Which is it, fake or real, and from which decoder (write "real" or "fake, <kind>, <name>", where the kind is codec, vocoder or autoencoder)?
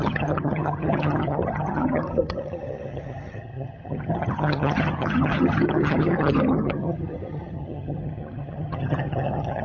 fake, vocoder, HiFi-GAN